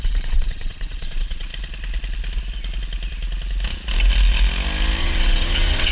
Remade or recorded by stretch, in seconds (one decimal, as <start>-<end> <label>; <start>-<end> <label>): 0.0-1.5 remade; 1.5-5.0 recorded; 5.0-5.9 remade